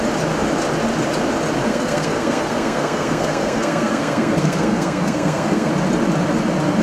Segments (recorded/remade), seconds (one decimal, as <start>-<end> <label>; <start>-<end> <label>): 0.0-1.7 recorded; 1.7-5.7 remade; 5.7-6.8 recorded